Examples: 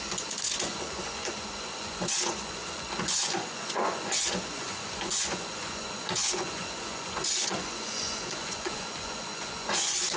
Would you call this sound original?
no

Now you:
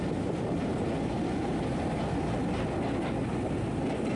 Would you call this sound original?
yes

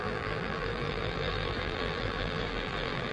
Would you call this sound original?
no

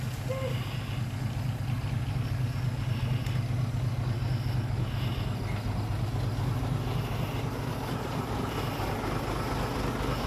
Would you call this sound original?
yes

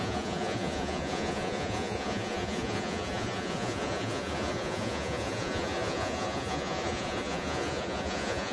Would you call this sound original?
no